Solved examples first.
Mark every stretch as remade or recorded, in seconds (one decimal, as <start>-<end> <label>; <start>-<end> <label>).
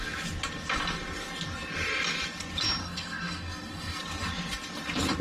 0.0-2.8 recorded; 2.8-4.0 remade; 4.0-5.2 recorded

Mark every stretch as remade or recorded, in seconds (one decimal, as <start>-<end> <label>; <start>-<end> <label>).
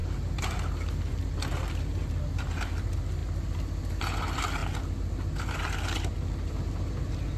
0.0-7.4 recorded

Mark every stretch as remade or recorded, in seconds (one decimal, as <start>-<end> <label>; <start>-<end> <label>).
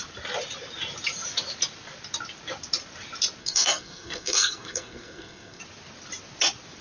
0.0-3.4 recorded; 3.4-5.6 remade; 5.6-6.8 recorded